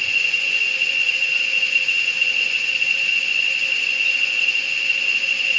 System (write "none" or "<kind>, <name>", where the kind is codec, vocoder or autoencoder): vocoder, Vocos